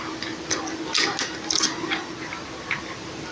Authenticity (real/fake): real